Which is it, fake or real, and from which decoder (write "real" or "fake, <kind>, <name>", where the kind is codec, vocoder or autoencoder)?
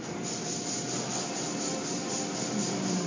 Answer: real